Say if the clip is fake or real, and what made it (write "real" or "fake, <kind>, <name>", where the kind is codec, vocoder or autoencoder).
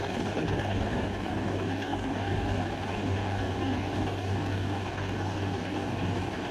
fake, codec, DAC